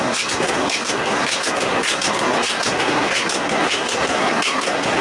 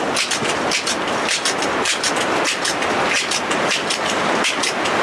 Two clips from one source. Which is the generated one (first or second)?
first